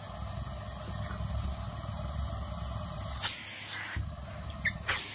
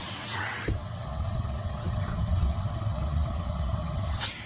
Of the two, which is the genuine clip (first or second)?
first